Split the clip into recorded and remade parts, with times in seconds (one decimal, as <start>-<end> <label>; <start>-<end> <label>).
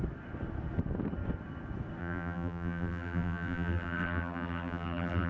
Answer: 0.0-2.0 recorded; 2.0-5.3 remade